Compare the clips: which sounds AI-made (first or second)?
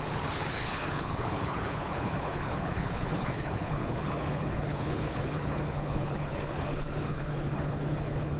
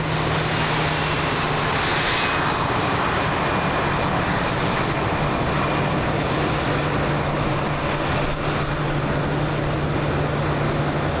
first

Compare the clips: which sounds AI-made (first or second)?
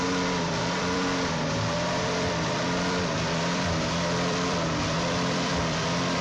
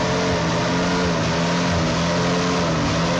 first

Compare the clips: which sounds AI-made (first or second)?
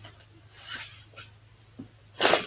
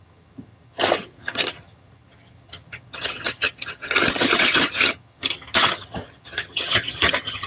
second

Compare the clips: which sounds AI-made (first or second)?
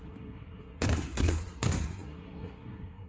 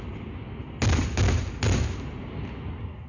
first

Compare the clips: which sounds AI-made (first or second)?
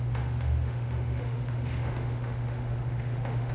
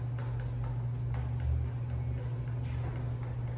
first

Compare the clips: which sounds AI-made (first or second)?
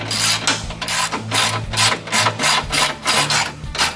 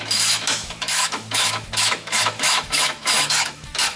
second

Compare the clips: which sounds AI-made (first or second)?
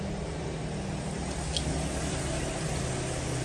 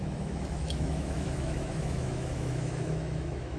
second